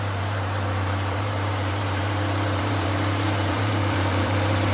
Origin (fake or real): fake